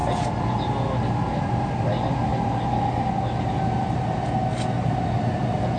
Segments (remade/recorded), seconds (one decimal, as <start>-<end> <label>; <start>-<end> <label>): 0.0-5.8 recorded